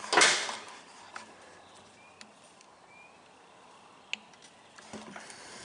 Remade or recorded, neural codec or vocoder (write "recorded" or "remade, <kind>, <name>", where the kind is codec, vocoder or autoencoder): recorded